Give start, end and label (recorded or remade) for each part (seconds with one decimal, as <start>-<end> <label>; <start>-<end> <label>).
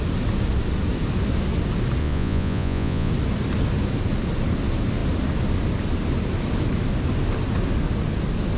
0.0-2.0 recorded; 2.0-3.1 remade; 3.1-8.6 recorded